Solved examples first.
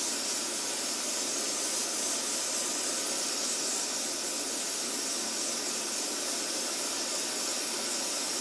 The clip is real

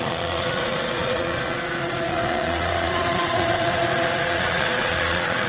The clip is fake